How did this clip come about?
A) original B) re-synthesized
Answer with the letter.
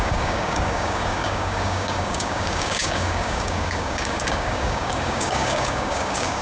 B